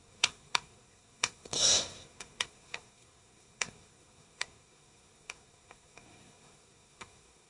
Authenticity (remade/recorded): remade